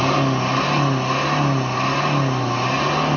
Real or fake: real